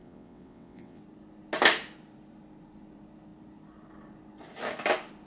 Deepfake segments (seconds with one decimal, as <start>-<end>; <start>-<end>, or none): 0.0-1.0